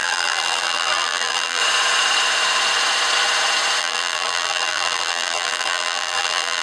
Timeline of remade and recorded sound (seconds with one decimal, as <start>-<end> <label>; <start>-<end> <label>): 0.0-1.6 remade; 1.6-3.8 recorded; 3.8-6.6 remade